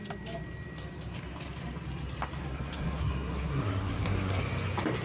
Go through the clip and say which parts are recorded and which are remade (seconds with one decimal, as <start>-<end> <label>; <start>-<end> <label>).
0.0-2.4 recorded; 2.4-4.4 remade; 4.4-5.0 recorded